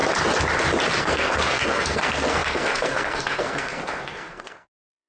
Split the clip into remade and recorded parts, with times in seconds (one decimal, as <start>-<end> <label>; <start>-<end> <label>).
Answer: 0.0-1.0 recorded; 1.0-5.1 remade